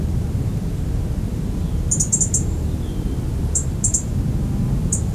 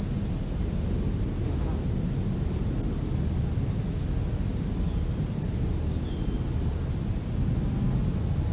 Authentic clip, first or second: second